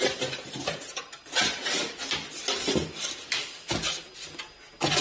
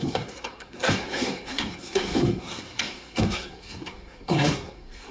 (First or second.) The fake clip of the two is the second